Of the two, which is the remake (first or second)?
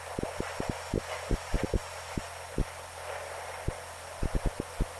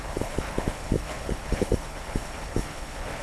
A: second